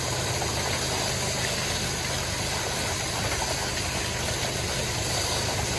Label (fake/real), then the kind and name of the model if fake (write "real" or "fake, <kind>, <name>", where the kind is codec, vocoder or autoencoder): real